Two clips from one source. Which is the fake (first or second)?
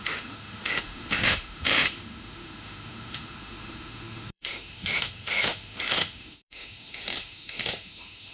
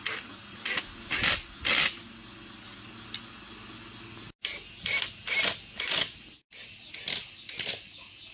first